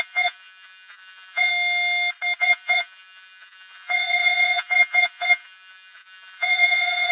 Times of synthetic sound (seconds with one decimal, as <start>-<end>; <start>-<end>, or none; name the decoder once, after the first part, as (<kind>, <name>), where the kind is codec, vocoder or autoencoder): 0.0-1.5 (vocoder, Vocos); 2.4-7.1